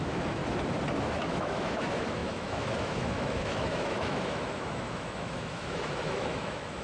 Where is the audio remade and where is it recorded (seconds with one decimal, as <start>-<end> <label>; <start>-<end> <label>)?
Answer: 0.0-0.4 remade; 0.4-1.0 recorded; 1.0-6.8 remade